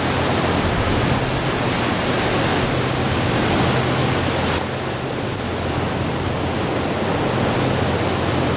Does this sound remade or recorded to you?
recorded